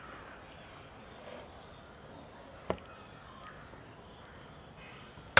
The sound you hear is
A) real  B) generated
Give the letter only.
A